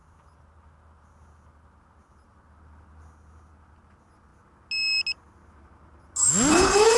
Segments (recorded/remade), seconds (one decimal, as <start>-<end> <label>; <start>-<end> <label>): 0.0-6.5 recorded; 6.5-7.0 remade